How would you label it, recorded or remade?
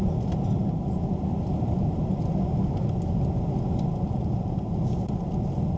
remade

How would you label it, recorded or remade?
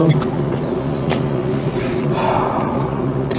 remade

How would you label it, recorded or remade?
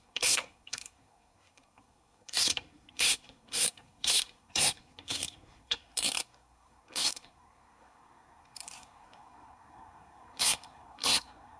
remade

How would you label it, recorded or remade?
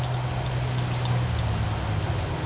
recorded